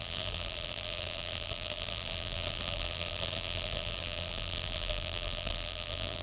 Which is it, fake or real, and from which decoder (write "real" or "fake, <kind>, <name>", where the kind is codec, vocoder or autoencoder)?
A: fake, vocoder, BigVGAN v2